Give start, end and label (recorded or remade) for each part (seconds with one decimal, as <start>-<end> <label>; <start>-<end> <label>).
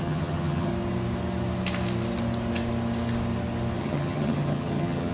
0.0-0.7 remade; 0.7-3.8 recorded; 3.8-5.1 remade